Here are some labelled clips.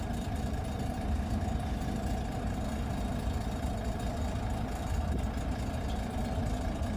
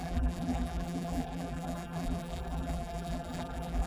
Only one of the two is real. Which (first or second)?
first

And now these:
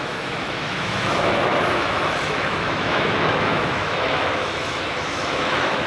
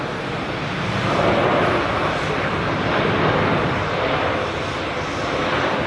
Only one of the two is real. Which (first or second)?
second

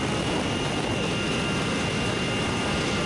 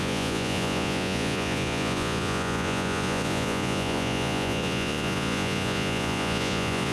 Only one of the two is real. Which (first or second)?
first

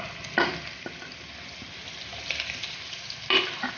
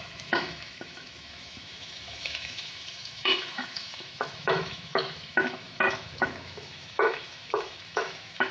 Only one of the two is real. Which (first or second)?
first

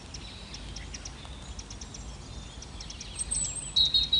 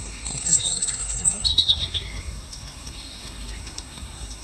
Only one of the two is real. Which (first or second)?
first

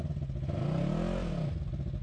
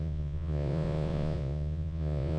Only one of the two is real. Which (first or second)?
first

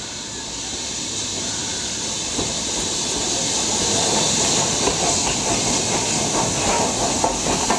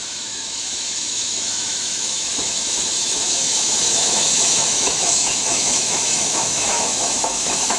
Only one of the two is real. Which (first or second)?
first